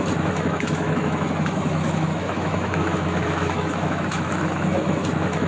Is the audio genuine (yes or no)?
no